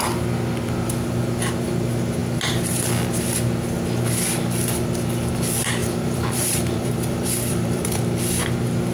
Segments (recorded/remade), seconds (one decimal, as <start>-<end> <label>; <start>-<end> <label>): 0.0-5.8 recorded; 5.8-8.0 remade; 8.0-8.9 recorded